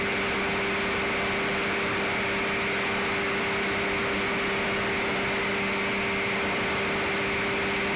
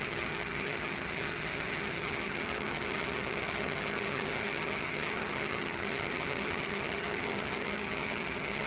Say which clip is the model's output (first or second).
second